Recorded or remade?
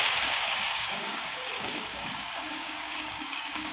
remade